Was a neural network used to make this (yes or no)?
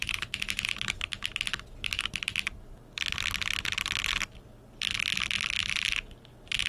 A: no